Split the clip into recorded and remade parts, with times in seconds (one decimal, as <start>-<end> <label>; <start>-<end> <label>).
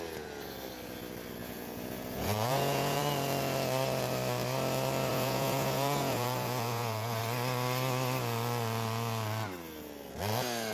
0.0-1.4 recorded; 1.4-3.0 remade; 3.0-5.1 recorded; 5.1-7.2 remade; 7.2-10.7 recorded